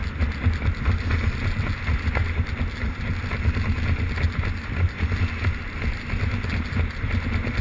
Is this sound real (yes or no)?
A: yes